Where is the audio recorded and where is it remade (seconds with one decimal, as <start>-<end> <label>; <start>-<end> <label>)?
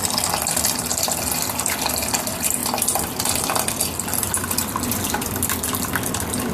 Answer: 0.0-6.5 recorded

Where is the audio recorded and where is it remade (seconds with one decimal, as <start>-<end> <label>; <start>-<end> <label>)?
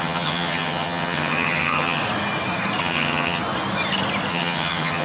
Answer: 0.0-2.0 remade; 2.0-2.8 recorded; 2.8-3.4 remade; 3.4-4.3 recorded; 4.3-5.0 remade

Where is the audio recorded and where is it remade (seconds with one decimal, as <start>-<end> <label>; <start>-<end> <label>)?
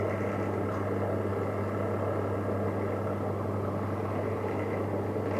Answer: 0.0-5.4 recorded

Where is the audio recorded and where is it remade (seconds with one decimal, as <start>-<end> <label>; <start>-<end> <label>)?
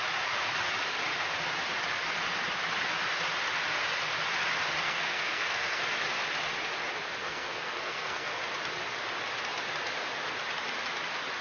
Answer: 0.0-4.8 recorded; 4.8-5.8 remade; 5.8-7.2 recorded; 7.2-8.4 remade; 8.4-11.4 recorded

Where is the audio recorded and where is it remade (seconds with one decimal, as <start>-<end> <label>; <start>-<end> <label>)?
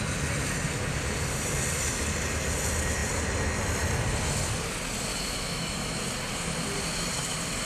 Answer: 0.0-5.1 recorded; 5.1-6.0 remade; 6.0-7.7 recorded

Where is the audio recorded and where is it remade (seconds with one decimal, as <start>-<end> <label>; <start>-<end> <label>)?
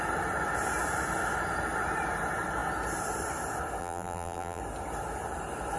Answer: 0.0-3.8 recorded; 3.8-4.6 remade; 4.6-5.8 recorded